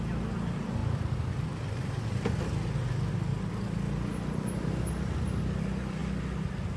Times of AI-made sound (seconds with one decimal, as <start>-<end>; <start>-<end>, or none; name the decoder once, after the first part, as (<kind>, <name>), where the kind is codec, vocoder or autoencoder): none